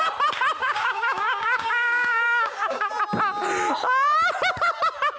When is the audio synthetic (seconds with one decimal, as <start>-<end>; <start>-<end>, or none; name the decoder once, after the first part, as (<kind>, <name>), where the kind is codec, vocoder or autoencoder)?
0.6-2.9 (codec, DAC)